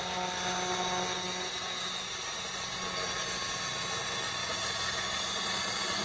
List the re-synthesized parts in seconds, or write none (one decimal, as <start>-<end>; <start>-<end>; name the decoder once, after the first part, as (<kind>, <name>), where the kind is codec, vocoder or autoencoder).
none